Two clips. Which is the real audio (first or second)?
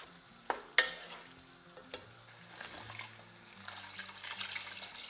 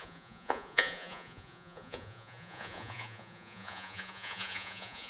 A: first